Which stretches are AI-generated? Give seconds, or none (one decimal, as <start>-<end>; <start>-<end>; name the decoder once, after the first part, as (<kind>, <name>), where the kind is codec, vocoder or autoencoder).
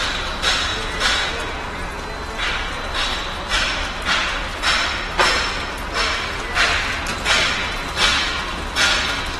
0.7-1.3 (vocoder, Vocos)